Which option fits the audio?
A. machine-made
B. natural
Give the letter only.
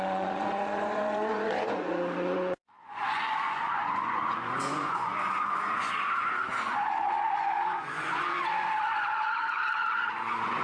A